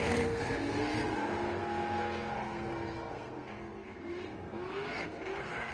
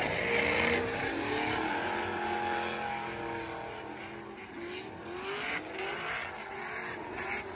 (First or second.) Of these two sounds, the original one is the second